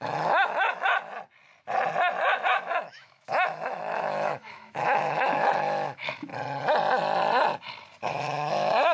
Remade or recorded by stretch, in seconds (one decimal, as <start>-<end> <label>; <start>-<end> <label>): 0.0-0.9 remade; 0.9-2.3 recorded; 2.3-6.3 remade; 6.3-8.1 recorded; 8.1-8.9 remade